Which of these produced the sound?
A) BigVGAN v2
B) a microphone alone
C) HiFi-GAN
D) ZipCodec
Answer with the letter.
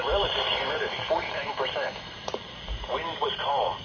A